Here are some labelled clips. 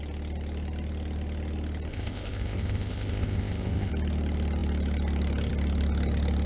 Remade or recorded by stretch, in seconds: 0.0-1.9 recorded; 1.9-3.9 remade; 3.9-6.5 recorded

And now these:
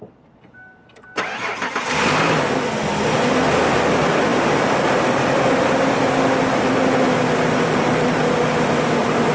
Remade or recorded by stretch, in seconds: 0.0-9.3 recorded